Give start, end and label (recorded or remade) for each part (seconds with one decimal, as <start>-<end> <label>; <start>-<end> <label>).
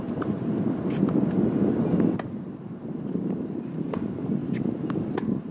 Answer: 0.0-5.5 recorded